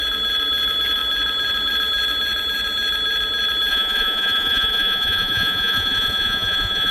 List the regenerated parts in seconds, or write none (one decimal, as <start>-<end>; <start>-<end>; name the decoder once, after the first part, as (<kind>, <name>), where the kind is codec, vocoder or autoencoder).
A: 3.7-6.9 (vocoder, Vocos)